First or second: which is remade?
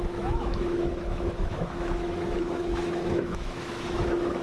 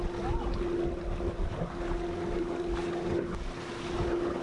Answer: first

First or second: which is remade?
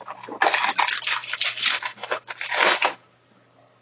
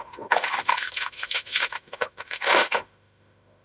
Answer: second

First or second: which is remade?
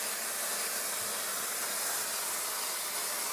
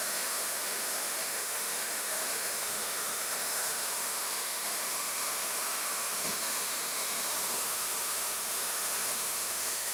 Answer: second